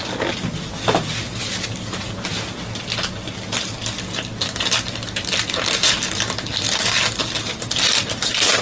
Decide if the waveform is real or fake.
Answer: real